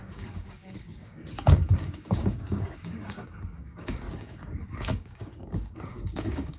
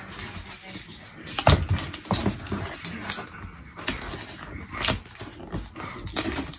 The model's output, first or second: first